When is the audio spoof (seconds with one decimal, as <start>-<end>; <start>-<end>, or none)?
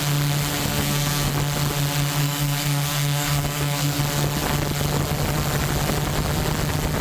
0.7-1.3; 2.2-4.0